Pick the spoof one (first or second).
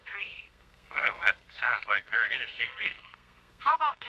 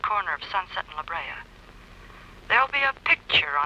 first